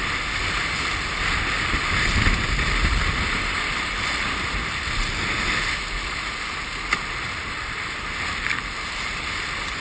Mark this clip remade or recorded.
remade